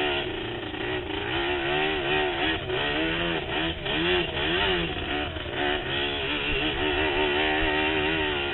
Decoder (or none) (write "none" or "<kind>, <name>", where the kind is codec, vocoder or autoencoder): none